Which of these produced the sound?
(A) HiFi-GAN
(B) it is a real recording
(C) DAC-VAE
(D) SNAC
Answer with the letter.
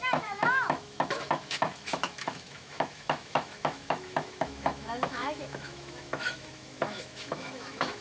C